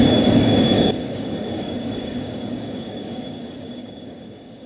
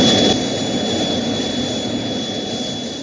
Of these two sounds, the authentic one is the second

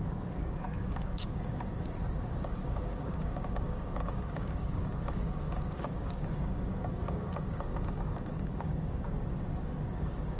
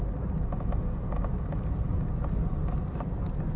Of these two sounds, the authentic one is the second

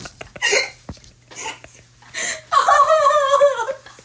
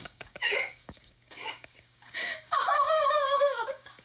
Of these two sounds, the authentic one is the first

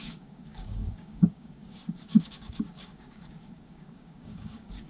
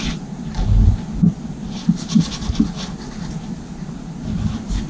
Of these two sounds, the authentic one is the second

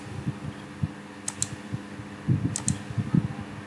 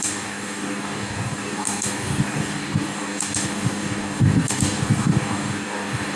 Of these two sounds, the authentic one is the first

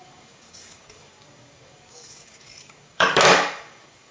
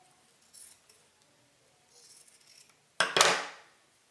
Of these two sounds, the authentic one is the second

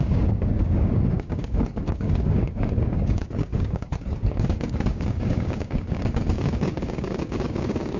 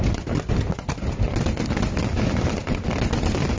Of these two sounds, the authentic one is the second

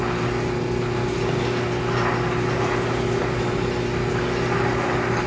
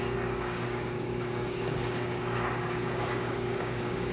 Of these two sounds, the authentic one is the first